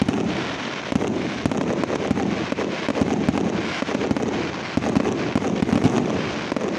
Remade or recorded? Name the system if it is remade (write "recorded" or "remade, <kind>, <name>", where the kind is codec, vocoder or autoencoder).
recorded